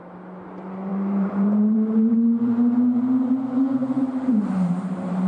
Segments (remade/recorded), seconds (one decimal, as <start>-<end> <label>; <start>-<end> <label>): 0.0-0.9 recorded; 0.9-2.7 remade; 2.7-3.8 recorded; 3.8-5.3 remade